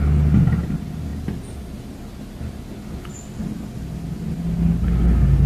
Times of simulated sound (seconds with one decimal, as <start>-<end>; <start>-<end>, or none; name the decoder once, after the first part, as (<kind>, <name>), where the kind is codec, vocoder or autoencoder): none